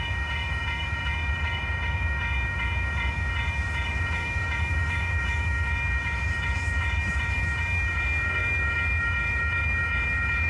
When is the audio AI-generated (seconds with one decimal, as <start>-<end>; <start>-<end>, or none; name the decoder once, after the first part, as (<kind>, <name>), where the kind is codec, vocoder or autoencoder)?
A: 0.0-10.5 (autoencoder, DAC-VAE)